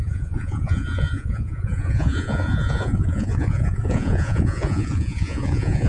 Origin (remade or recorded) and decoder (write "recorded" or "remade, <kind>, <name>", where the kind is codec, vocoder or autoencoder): remade, vocoder, Vocos